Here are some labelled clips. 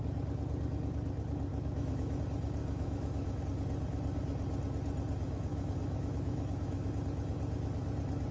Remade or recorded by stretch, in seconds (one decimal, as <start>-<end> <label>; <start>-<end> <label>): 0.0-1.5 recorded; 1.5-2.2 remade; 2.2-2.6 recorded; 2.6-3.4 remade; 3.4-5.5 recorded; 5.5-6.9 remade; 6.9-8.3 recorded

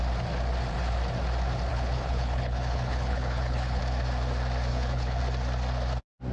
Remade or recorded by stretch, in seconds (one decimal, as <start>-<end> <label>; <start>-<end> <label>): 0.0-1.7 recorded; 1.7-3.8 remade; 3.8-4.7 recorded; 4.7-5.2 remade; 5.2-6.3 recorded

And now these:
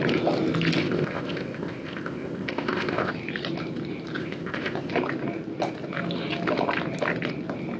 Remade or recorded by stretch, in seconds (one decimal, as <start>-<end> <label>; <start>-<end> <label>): 0.0-0.8 recorded; 0.8-3.1 remade; 3.1-4.2 recorded; 4.2-4.9 remade; 4.9-7.8 recorded

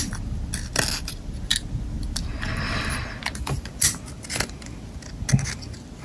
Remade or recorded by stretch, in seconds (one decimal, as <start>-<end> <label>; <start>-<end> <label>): 0.0-6.0 recorded

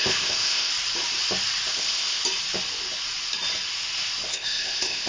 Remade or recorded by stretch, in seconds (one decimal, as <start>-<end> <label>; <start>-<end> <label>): 0.0-0.7 remade; 0.7-1.7 recorded; 1.7-2.2 remade; 2.2-4.3 recorded; 4.3-5.1 remade

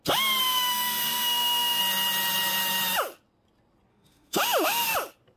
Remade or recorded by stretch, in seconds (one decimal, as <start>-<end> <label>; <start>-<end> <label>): 0.0-0.4 recorded; 0.4-1.8 remade; 1.8-3.9 recorded; 3.9-4.9 remade; 4.9-5.4 recorded

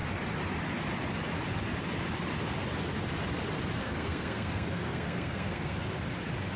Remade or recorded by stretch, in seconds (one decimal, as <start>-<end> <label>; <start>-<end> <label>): 0.0-3.8 recorded; 3.8-6.0 remade; 6.0-6.6 recorded